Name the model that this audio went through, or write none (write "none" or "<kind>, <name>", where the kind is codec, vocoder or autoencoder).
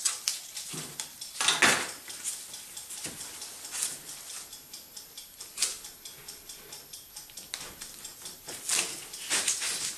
none